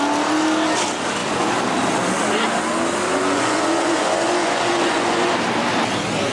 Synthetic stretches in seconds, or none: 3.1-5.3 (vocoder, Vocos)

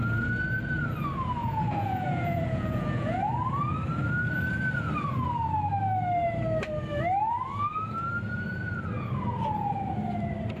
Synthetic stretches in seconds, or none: 1.4-3.3 (vocoder, Vocos)

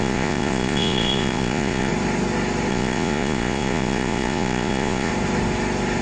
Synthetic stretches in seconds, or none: 0.0-1.9 (vocoder, Vocos); 2.7-5.1

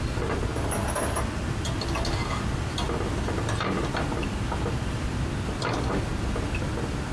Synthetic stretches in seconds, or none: none

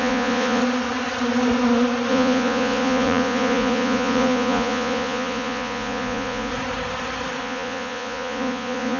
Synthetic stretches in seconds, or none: 0.0-0.6 (vocoder, Vocos); 2.1-6.5; 7.4-9.0

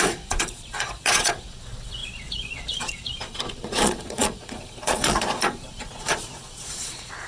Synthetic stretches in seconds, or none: 0.0-7.3 (vocoder, Vocos)

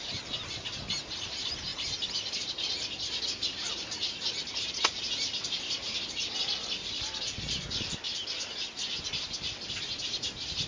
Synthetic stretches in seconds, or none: none